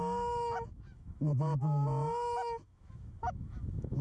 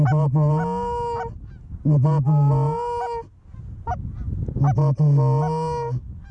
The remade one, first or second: first